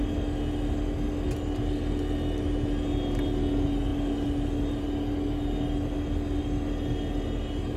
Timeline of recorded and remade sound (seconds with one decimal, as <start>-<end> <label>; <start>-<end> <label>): 0.0-7.8 recorded